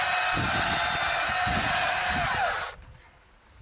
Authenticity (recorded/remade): recorded